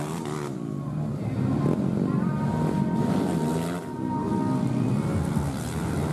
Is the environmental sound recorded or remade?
recorded